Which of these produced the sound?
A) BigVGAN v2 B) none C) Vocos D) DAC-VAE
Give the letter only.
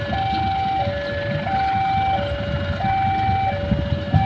B